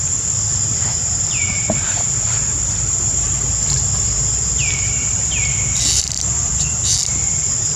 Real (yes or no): no